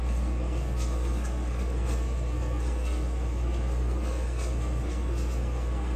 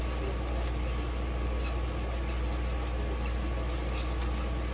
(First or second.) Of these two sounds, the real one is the second